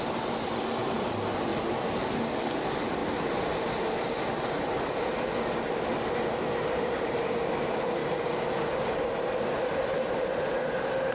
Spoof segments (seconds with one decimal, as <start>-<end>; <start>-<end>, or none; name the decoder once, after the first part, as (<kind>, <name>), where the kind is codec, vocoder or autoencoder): none